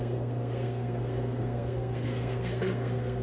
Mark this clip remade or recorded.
remade